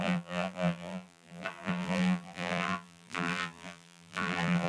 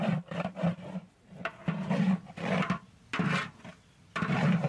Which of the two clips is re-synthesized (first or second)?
first